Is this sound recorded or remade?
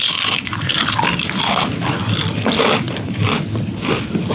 recorded